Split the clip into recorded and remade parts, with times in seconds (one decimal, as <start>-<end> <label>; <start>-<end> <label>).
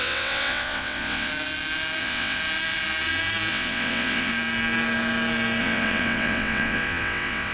0.0-1.3 remade; 1.3-2.0 recorded; 2.0-2.4 remade; 2.4-3.5 recorded; 3.5-4.3 remade; 4.3-5.6 recorded; 5.6-7.5 remade